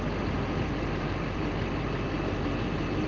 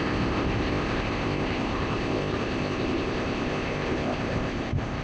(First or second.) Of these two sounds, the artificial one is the second